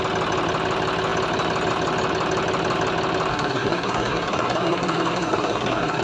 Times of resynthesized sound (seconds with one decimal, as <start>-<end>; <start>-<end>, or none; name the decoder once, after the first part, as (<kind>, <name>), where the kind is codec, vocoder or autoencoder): 3.3-6.0 (codec, SNAC)